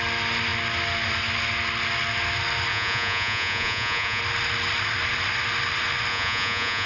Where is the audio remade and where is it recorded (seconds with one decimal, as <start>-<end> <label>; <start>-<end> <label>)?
0.0-2.7 recorded; 2.7-4.2 remade; 4.2-6.1 recorded; 6.1-6.9 remade